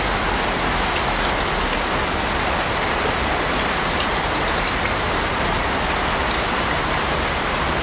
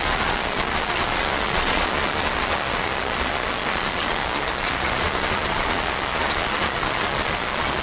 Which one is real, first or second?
first